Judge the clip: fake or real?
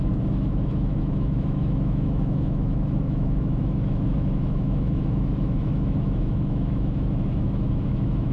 fake